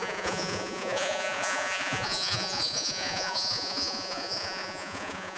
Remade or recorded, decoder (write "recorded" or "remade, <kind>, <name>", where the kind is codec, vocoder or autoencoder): remade, vocoder, Vocos